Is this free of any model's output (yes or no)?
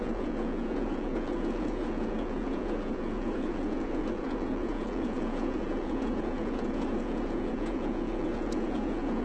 no